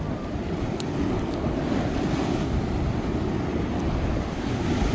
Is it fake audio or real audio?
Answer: real